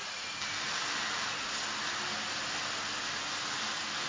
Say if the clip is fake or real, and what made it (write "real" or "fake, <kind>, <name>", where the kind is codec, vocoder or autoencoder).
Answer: real